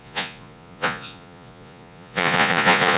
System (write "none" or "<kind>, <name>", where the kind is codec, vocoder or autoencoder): vocoder, Vocos